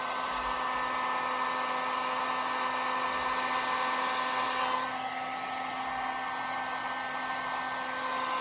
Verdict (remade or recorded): recorded